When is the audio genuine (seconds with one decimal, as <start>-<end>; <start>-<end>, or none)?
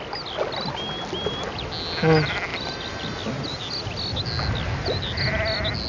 0.0-5.9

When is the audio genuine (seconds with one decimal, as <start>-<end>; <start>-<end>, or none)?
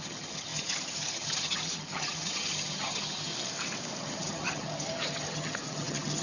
3.3-4.0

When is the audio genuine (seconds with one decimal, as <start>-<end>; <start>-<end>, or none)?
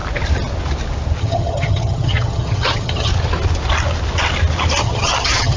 0.0-1.2; 3.1-4.8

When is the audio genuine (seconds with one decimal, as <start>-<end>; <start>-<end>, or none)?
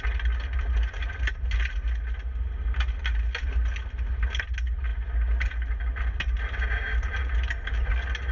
0.0-8.3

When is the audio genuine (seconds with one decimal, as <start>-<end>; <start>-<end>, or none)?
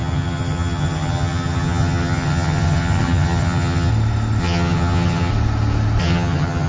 3.9-4.4; 5.3-6.0